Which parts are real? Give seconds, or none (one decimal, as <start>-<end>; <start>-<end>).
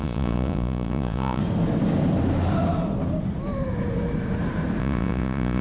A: 1.4-4.8